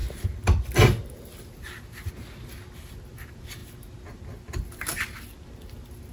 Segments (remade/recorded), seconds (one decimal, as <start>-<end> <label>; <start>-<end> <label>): 0.0-6.1 recorded